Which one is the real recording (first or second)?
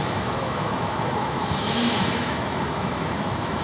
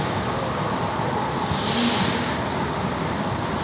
second